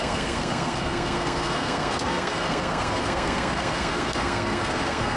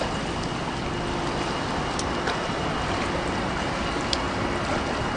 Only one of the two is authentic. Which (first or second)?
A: second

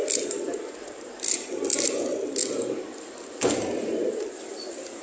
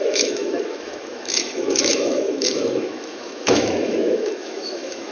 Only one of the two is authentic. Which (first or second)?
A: first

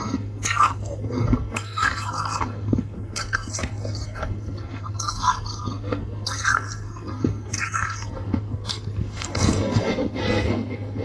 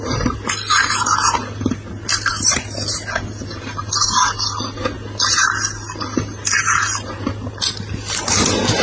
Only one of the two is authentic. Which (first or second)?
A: second